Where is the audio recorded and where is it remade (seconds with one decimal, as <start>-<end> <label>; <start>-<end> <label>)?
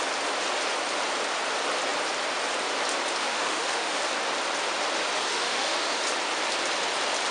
0.0-3.2 recorded; 3.2-4.0 remade; 4.0-5.3 recorded; 5.3-6.0 remade; 6.0-7.3 recorded